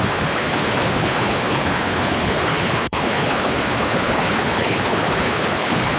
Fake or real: fake